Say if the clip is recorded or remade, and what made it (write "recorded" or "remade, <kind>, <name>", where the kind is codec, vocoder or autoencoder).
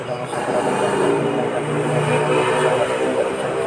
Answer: recorded